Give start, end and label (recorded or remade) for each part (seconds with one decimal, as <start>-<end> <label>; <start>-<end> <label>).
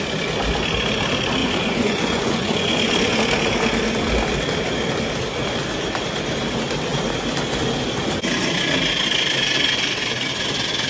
0.0-1.4 recorded; 1.4-3.2 remade; 3.2-10.9 recorded